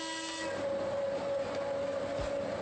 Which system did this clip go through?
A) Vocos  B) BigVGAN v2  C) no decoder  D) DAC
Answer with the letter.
C